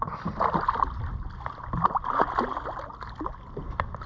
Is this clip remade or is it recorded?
recorded